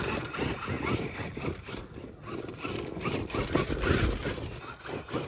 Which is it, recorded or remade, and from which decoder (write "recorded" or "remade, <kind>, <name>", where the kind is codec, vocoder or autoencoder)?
recorded